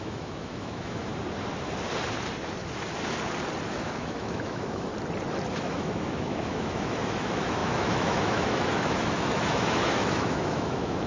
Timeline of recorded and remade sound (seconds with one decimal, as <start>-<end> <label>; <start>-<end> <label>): 0.0-1.1 remade; 1.1-3.7 recorded; 3.7-4.9 remade; 4.9-5.5 recorded; 5.5-11.1 remade